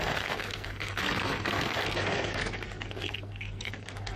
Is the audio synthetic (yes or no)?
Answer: yes